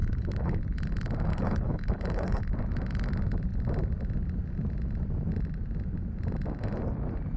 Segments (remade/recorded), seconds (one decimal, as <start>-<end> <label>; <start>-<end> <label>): 0.0-0.6 remade; 0.6-1.3 recorded; 1.3-2.4 remade; 2.4-7.4 recorded